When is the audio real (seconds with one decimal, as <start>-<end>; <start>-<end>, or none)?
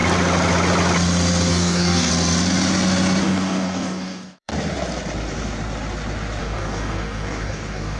0.0-1.5; 2.1-3.2; 4.5-6.4